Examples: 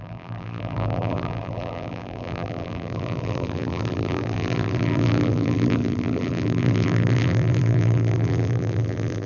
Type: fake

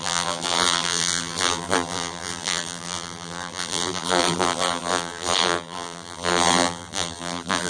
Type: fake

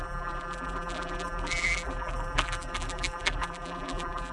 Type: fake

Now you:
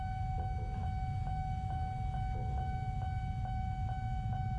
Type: real